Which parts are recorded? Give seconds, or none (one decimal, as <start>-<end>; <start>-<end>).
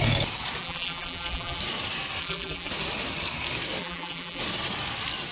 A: 0.0-0.6; 1.6-2.2; 2.7-3.8; 4.4-5.3